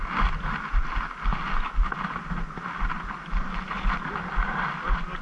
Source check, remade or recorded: recorded